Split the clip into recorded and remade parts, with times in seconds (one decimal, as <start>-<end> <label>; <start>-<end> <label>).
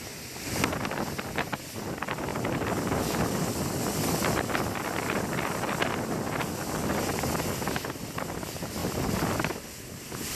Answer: 0.0-10.3 recorded